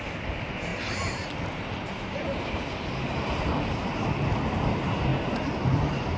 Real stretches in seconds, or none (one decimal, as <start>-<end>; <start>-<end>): 0.0-6.2